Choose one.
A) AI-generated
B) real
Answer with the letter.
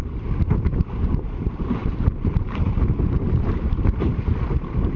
A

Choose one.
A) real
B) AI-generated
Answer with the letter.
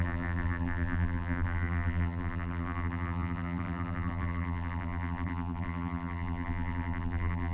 B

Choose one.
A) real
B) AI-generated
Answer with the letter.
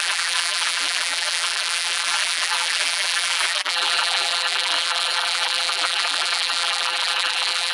B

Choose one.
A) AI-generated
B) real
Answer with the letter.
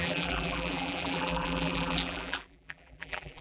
A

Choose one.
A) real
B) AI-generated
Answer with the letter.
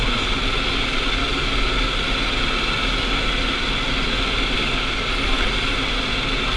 A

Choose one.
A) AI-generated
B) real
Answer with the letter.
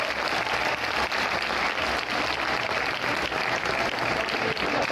B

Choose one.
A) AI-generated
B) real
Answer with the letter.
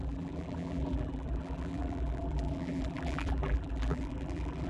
A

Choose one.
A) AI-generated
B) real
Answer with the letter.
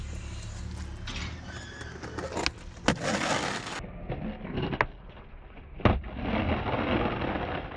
B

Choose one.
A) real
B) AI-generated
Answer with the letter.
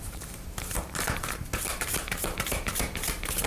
B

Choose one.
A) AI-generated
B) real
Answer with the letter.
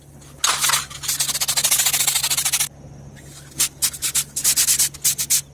B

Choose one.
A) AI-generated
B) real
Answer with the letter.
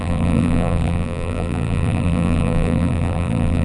A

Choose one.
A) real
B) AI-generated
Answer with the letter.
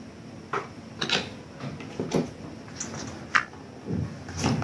A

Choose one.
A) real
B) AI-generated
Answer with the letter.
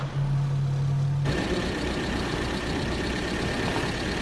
A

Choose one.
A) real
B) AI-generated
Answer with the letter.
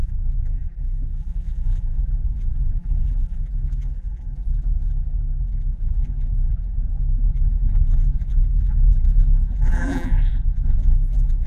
B